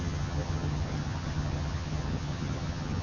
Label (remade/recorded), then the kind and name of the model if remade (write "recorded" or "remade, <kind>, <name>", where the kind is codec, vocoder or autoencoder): remade, vocoder, HiFi-GAN